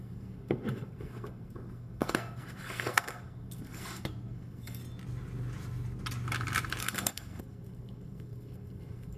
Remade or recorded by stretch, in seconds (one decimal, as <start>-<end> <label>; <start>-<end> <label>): 0.0-4.8 remade; 4.8-6.8 recorded; 6.8-9.2 remade